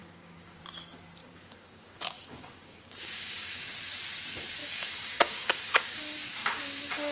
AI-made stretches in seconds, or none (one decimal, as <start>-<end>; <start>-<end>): 0.0-0.6; 1.2-3.8; 4.6-6.0; 6.4-7.1